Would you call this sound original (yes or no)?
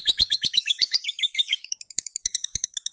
no